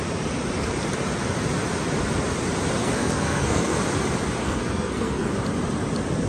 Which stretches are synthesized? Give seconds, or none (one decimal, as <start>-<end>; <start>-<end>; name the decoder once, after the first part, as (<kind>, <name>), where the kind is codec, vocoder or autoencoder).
2.8-3.8 (codec, SNAC); 4.4-5.3